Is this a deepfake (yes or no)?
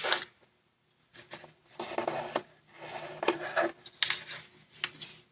no